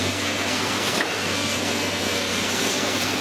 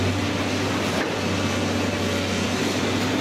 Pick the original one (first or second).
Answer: second